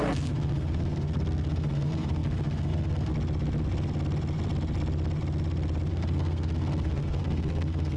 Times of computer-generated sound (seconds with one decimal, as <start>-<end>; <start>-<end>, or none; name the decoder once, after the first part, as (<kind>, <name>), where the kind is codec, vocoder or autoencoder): 0.0-3.1 (codec, SNAC); 5.9-8.0